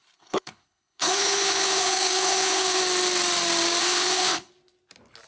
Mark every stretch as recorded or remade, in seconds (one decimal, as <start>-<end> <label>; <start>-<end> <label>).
0.0-2.8 remade; 2.8-3.8 recorded; 3.8-4.5 remade; 4.5-5.3 recorded